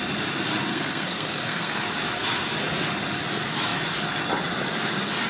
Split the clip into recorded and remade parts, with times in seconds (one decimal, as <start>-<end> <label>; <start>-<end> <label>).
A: 0.0-0.7 recorded; 0.7-1.8 remade; 1.8-5.3 recorded